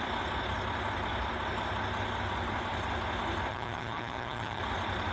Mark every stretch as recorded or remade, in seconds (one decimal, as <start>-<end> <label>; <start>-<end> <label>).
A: 0.0-3.5 recorded; 3.5-4.6 remade; 4.6-5.1 recorded